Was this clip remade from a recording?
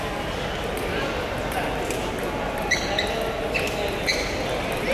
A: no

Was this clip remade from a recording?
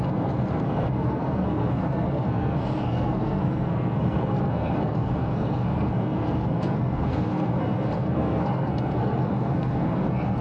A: yes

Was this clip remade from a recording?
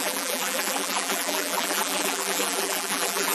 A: yes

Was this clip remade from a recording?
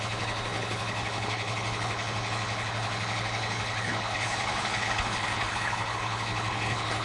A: yes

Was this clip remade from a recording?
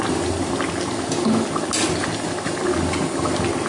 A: no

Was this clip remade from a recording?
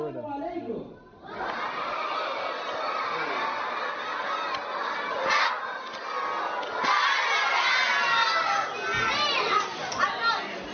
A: no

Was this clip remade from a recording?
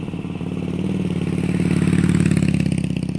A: no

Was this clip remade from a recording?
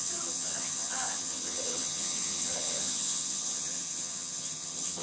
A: yes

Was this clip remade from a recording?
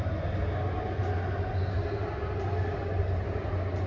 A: no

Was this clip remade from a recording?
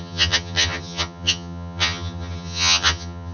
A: yes